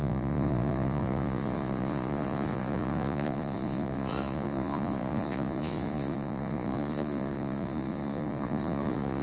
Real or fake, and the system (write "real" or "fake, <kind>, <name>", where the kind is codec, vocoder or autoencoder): fake, vocoder, Vocos